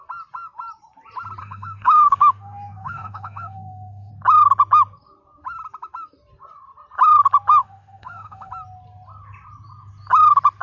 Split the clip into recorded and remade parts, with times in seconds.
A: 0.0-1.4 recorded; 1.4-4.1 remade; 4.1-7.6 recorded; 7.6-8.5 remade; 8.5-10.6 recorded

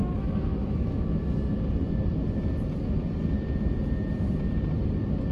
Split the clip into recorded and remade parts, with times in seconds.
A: 0.0-1.2 remade; 1.2-5.3 recorded

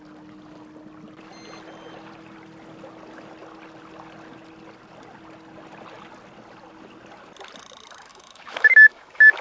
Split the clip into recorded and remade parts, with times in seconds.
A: 0.0-8.1 recorded; 8.1-9.4 remade

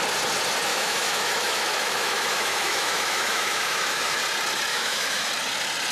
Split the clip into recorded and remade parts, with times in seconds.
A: 0.0-0.7 recorded; 0.7-4.2 remade; 4.2-4.7 recorded; 4.7-5.3 remade; 5.3-5.9 recorded

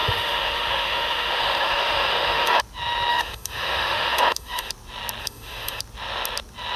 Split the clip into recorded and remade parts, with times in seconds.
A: 0.0-2.6 remade; 2.6-3.1 recorded; 3.1-4.7 remade; 4.7-5.2 recorded; 5.2-5.8 remade; 5.8-6.8 recorded

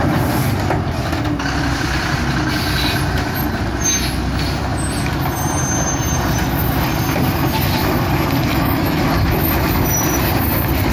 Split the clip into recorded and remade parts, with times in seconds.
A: 0.0-8.5 recorded; 8.5-9.0 remade; 9.0-10.9 recorded

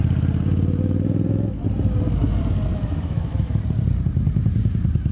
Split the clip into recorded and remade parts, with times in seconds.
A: 0.0-2.7 recorded; 2.7-3.6 remade; 3.6-5.1 recorded

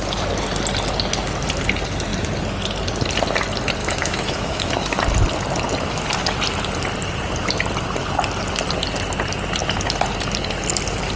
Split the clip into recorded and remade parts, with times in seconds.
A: 0.0-3.8 recorded; 3.8-5.0 remade; 5.0-11.2 recorded